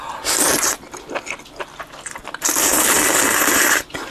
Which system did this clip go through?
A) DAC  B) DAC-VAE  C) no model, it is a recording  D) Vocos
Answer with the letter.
C